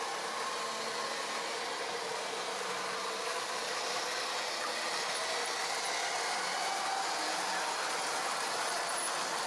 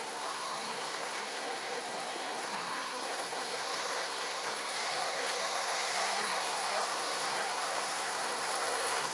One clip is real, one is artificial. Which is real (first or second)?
first